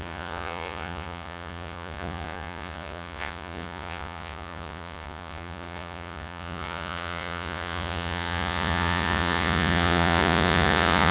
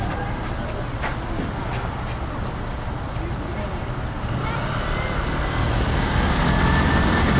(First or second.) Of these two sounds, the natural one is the second